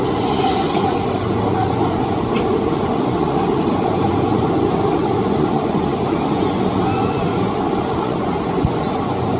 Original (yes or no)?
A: no